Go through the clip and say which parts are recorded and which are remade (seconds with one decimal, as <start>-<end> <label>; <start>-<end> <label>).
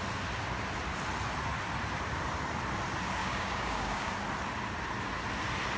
0.0-3.2 recorded; 3.2-4.1 remade; 4.1-5.8 recorded